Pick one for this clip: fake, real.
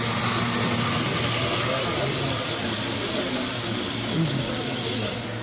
real